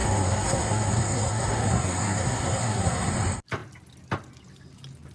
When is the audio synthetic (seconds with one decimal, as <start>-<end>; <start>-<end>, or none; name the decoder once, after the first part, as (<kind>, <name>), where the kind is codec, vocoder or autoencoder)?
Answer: 0.0-3.1 (codec, SNAC)